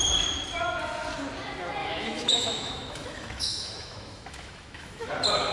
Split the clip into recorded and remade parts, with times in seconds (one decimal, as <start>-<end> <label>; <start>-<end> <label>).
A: 0.0-1.8 recorded; 1.8-5.1 remade; 5.1-5.5 recorded